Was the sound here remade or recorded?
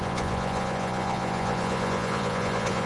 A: remade